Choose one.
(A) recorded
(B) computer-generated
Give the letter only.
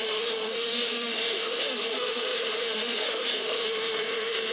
B